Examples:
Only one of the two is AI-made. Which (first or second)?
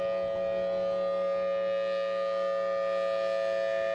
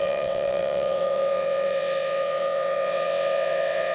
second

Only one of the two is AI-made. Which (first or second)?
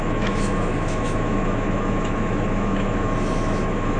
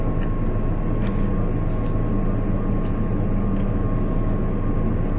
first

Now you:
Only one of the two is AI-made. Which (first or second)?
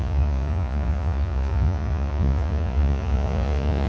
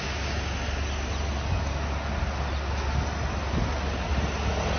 first